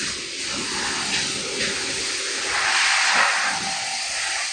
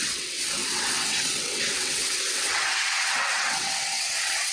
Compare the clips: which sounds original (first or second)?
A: first